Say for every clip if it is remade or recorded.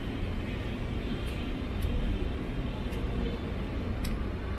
recorded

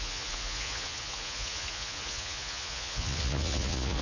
remade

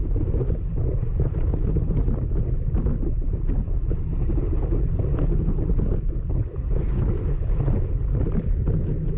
recorded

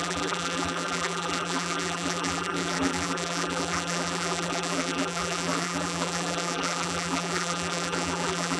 remade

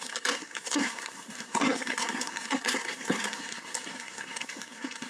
remade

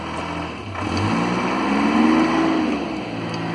recorded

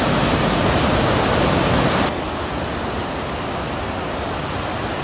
recorded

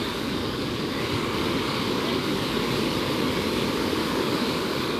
remade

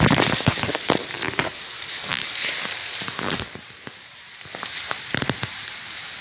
remade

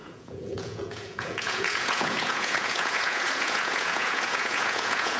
remade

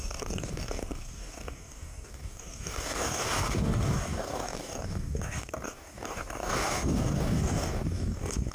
remade